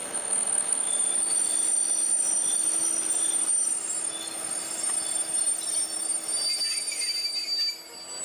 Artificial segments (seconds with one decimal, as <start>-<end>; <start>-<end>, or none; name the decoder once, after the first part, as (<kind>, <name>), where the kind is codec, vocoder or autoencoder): 0.0-0.9 (autoencoder, DAC-VAE)